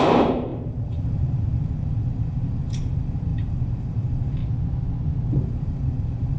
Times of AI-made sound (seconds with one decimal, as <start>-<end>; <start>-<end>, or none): 0.0-4.4; 5.3-6.4